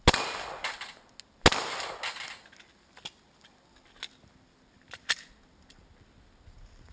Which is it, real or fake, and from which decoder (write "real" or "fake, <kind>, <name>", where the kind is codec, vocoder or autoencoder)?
real